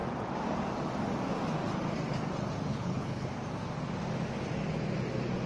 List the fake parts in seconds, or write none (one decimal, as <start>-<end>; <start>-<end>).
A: 2.7-3.3

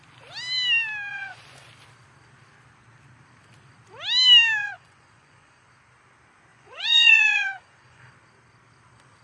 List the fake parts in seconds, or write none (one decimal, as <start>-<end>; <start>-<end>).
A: 1.1-1.7; 4.6-5.7; 6.5-8.1